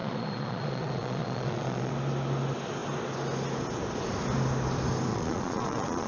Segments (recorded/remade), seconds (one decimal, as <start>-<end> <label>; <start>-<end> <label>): 0.0-1.9 remade; 1.9-5.1 recorded; 5.1-6.1 remade